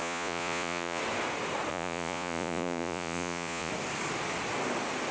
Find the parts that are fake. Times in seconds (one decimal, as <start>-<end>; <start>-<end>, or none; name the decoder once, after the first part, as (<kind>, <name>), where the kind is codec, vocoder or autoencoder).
0.0-1.0 (vocoder, Vocos); 1.7-3.7